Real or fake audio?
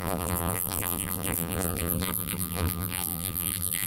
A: fake